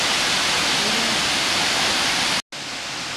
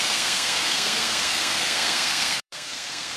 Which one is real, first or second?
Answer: first